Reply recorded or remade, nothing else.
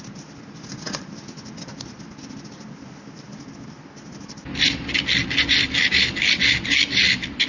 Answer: recorded